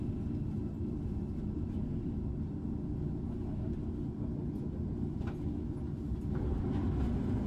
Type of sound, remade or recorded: recorded